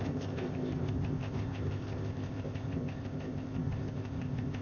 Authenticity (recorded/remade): remade